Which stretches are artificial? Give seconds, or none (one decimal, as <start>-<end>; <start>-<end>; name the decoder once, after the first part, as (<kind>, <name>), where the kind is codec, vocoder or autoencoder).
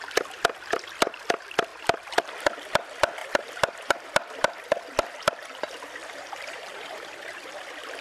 1.7-2.2 (vocoder, BigVGAN v2); 3.2-4.1; 6.0-7.5